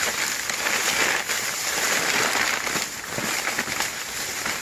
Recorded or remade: recorded